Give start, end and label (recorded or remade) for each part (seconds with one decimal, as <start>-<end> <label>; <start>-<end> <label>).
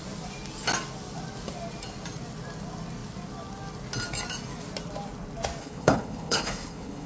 0.0-5.6 recorded; 5.6-7.1 remade